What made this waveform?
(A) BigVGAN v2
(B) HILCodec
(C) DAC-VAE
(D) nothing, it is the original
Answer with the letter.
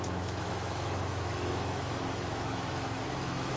C